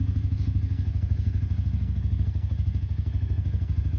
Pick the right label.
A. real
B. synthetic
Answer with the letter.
B